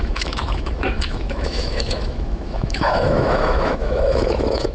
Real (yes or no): no